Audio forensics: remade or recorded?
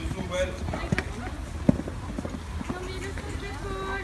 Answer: recorded